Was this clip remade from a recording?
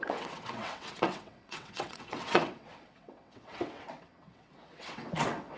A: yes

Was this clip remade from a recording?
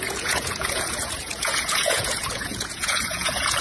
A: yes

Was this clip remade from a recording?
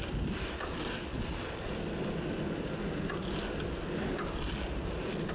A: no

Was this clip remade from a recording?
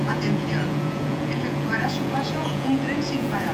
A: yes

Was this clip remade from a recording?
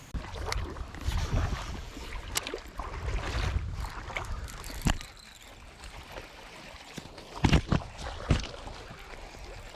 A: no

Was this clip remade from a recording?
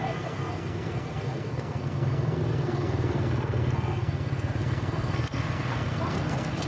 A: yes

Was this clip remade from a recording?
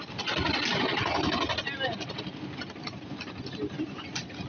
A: no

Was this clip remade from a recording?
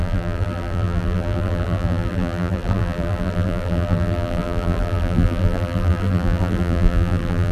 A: yes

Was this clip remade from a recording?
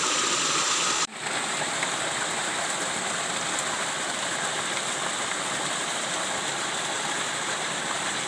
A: no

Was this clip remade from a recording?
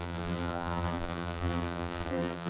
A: yes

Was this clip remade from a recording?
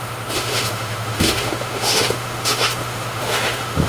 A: yes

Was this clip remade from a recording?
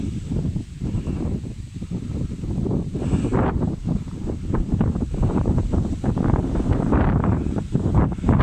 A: yes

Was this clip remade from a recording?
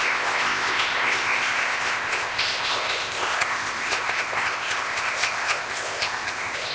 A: yes